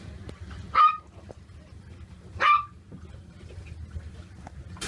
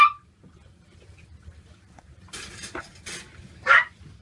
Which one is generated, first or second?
second